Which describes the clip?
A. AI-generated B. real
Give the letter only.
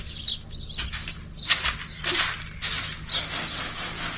B